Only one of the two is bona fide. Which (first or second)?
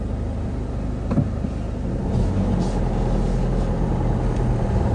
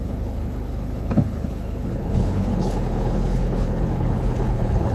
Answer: first